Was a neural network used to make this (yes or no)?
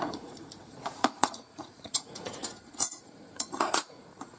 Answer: yes